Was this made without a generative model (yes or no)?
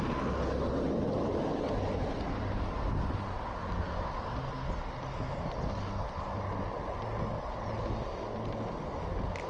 yes